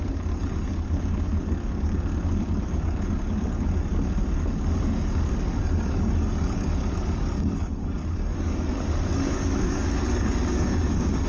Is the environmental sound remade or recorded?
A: remade